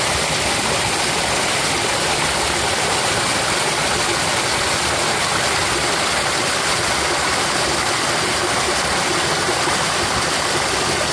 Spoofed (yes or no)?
no